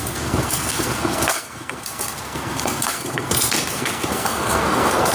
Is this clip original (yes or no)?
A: no